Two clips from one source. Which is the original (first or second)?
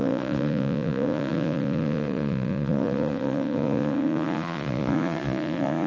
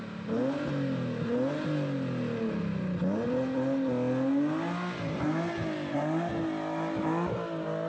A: second